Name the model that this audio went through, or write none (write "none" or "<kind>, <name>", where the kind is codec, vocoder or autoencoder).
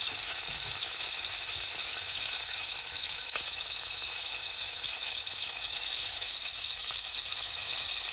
autoencoder, DAC-VAE